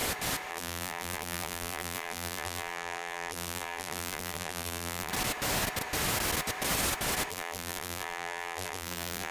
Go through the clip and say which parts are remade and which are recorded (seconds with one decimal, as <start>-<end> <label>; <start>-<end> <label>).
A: 0.0-0.5 recorded; 0.5-5.1 remade; 5.1-7.3 recorded; 7.3-9.3 remade